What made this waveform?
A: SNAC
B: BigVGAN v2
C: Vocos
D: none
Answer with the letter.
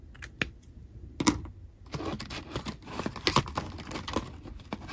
D